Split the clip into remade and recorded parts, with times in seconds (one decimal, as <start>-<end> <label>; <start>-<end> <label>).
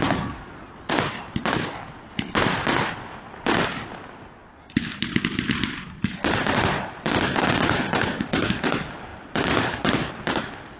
0.0-10.8 recorded